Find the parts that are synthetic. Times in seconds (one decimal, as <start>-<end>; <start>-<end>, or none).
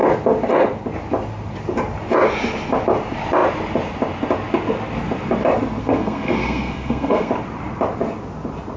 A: 5.8-7.3